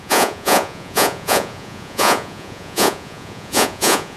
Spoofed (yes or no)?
yes